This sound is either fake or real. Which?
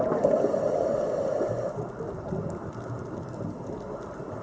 real